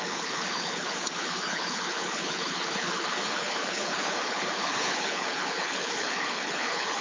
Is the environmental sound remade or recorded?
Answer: remade